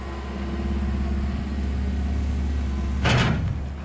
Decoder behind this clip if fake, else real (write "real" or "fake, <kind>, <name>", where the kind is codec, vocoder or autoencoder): real